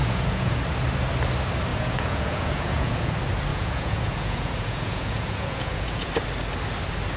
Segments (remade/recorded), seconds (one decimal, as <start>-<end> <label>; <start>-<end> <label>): 0.0-0.6 remade; 0.6-1.7 recorded; 1.7-3.1 remade; 3.1-3.5 recorded; 3.5-6.1 remade; 6.1-7.2 recorded